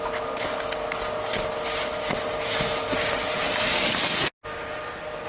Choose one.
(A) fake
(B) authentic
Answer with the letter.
B